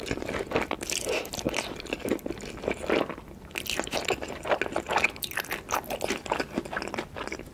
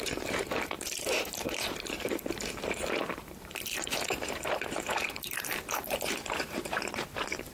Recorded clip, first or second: first